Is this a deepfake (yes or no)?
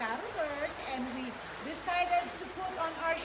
no